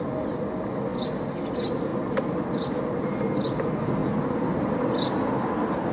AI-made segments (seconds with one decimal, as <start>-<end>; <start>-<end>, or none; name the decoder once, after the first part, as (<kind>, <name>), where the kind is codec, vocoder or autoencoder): none